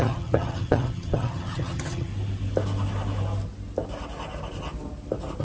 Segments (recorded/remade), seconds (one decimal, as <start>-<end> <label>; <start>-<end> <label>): 0.0-2.1 remade; 2.1-5.4 recorded